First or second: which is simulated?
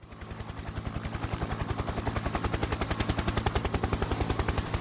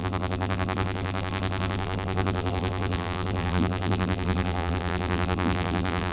second